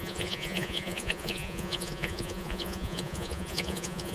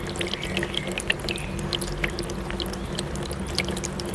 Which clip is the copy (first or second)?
first